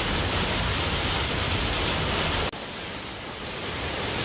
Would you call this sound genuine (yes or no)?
yes